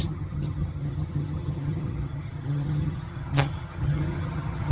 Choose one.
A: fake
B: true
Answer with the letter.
A